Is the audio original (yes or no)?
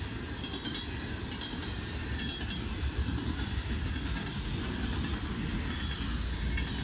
yes